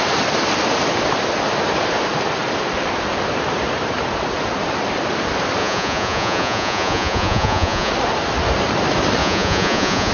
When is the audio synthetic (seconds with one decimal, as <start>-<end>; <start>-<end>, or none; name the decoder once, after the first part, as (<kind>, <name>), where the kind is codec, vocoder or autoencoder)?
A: 5.6-7.9 (vocoder, Vocos); 9.2-10.1